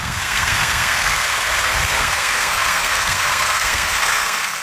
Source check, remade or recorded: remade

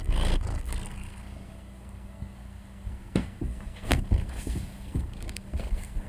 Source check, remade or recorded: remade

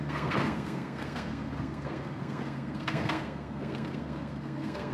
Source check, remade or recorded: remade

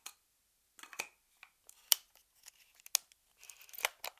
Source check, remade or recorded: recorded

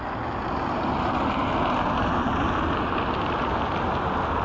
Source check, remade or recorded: recorded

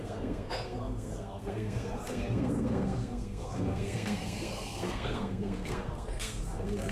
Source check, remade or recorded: remade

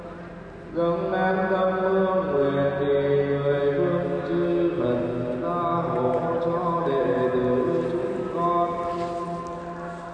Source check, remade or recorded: recorded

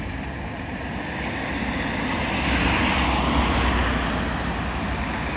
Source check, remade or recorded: recorded